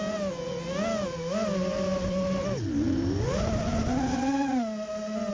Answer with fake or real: real